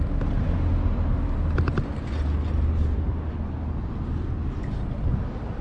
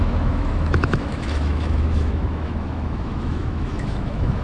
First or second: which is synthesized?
second